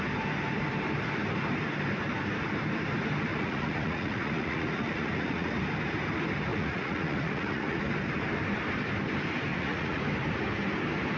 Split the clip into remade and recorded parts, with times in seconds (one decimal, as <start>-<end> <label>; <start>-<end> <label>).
0.0-3.3 recorded; 3.3-5.5 remade; 5.5-6.5 recorded; 6.5-7.8 remade; 7.8-9.5 recorded; 9.5-10.0 remade; 10.0-11.2 recorded

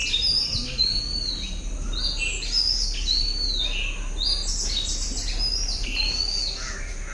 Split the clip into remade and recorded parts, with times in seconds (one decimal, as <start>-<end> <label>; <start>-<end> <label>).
0.0-7.1 recorded

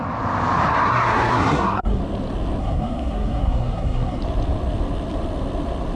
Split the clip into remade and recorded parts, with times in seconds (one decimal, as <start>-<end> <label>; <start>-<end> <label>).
0.0-0.7 recorded; 0.7-2.0 remade; 2.0-2.6 recorded; 2.6-4.2 remade; 4.2-6.0 recorded

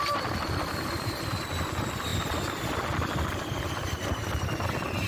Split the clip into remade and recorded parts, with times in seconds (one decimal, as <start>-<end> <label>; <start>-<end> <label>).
0.0-5.1 recorded

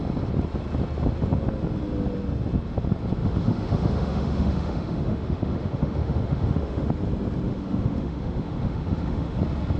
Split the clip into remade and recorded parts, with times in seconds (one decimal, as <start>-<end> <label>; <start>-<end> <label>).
0.0-3.2 recorded; 3.2-6.9 remade; 6.9-7.5 recorded; 7.5-9.4 remade; 9.4-9.8 recorded